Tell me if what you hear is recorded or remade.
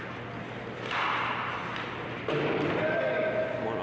recorded